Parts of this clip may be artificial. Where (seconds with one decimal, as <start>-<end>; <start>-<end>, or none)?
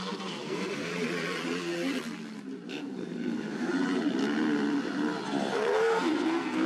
0.0-0.9; 2.7-3.7; 5.5-6.7